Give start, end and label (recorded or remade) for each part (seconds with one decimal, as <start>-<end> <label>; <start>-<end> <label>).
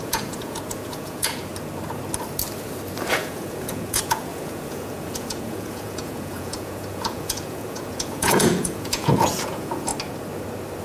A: 0.0-1.5 remade; 1.5-3.1 recorded; 3.1-9.9 remade; 9.9-10.8 recorded